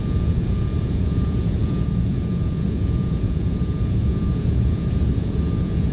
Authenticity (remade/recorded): remade